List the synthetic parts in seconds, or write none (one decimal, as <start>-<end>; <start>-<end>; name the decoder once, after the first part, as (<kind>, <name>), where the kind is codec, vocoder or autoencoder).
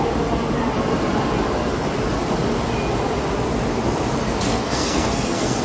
4.5-5.6 (codec, SNAC)